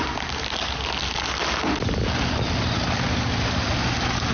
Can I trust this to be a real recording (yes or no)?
yes